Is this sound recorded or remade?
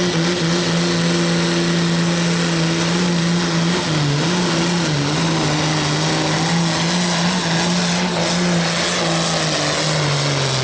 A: recorded